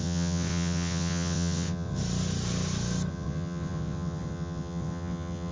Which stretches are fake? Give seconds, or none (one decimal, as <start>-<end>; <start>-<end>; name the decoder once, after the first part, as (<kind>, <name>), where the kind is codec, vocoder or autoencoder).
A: 0.0-2.0 (vocoder, WaveNeXt); 3.1-5.5